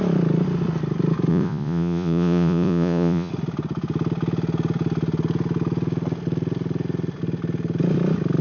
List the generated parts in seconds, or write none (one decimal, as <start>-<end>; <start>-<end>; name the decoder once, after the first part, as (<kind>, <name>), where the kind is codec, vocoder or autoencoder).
1.3-3.3 (vocoder, Vocos)